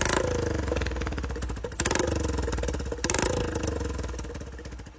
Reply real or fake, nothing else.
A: real